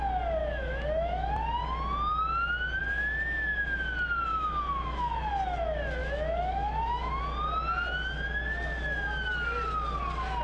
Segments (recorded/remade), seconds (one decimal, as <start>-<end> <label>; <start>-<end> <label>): 0.0-0.4 recorded; 0.4-1.3 remade; 1.3-4.3 recorded; 4.3-5.3 remade; 5.3-6.0 recorded; 6.0-7.2 remade; 7.2-10.4 recorded